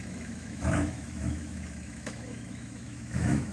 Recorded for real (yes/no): no